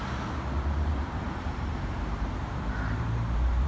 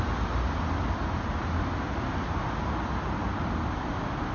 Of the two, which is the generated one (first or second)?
first